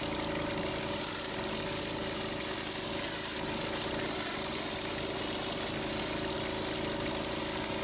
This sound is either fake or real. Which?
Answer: real